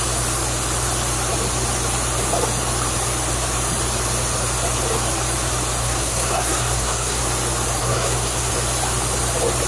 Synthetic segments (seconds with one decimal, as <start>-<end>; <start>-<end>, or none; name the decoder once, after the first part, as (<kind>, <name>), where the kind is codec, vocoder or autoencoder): 5.8-7.2 (codec, SNAC); 7.8-8.5